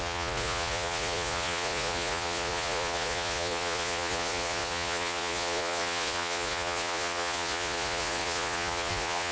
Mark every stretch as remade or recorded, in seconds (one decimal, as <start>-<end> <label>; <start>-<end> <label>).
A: 0.0-9.3 remade